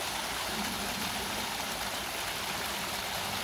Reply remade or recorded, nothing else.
recorded